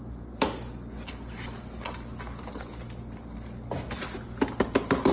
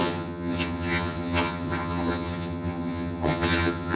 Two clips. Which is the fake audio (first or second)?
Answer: second